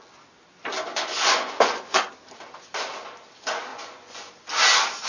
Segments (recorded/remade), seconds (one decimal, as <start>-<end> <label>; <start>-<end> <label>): 0.0-0.9 recorded; 0.9-2.1 remade; 2.1-3.7 recorded; 3.7-4.3 remade; 4.3-5.1 recorded